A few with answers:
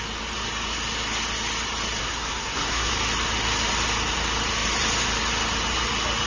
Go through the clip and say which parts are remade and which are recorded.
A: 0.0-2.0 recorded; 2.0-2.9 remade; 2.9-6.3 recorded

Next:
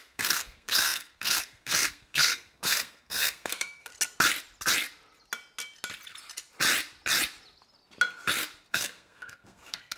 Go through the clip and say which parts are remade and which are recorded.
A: 0.0-3.9 remade; 3.9-8.7 recorded; 8.7-10.0 remade